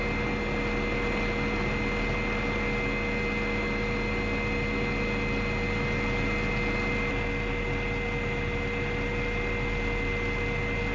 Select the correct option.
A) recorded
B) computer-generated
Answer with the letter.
A